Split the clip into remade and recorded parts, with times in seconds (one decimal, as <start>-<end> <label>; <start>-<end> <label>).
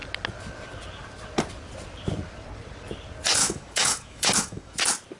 0.0-3.4 recorded; 3.4-4.8 remade; 4.8-5.2 recorded